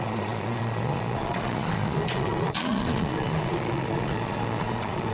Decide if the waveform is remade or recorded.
remade